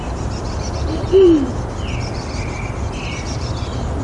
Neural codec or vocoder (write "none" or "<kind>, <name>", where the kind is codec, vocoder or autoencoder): none